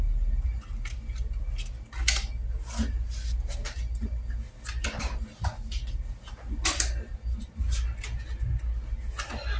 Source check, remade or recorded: recorded